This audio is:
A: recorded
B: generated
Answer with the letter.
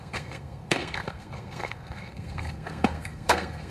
B